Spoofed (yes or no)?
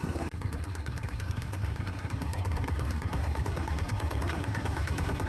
yes